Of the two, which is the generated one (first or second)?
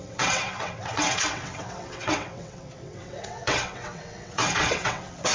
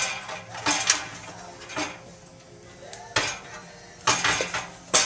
first